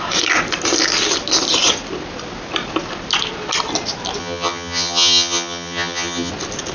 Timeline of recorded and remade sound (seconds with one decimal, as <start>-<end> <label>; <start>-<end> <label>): 0.0-4.2 recorded; 4.2-6.3 remade; 6.3-6.7 recorded